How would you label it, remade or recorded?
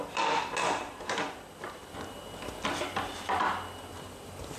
recorded